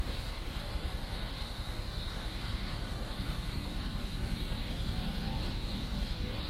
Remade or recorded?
remade